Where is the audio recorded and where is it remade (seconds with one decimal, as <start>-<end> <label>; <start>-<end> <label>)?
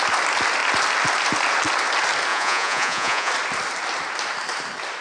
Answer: 0.0-2.3 recorded; 2.3-3.3 remade; 3.3-5.0 recorded